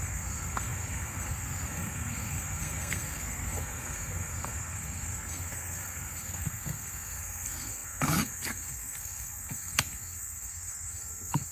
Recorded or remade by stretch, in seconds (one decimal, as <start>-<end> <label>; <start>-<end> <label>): 0.0-11.5 remade